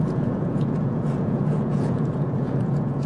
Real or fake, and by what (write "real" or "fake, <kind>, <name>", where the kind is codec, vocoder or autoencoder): fake, vocoder, Vocos